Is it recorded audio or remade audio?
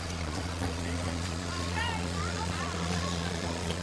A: remade